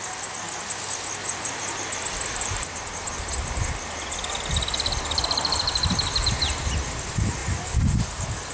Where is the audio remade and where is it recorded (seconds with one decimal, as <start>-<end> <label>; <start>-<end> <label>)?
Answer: 0.0-1.2 recorded; 1.2-3.7 remade; 3.7-8.5 recorded